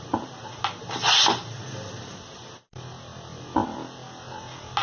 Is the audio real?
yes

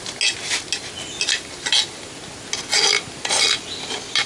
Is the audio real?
yes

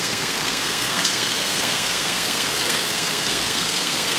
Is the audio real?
no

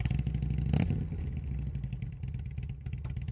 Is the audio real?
yes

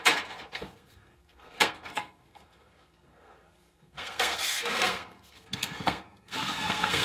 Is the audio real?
no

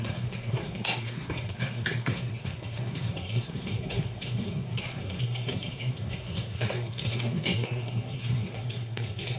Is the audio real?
no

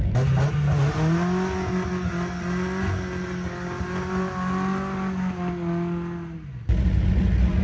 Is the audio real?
yes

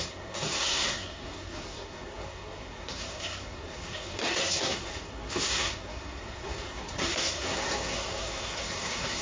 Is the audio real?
no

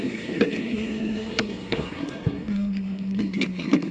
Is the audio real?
no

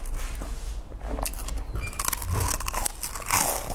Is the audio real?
yes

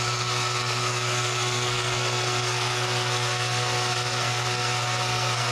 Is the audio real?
no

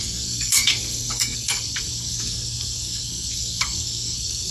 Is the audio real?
no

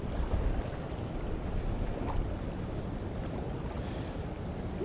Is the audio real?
yes